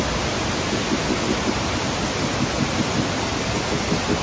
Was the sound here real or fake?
real